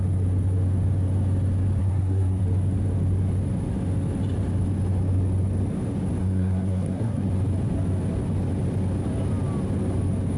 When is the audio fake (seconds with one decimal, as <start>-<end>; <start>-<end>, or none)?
1.8-2.4; 6.2-7.3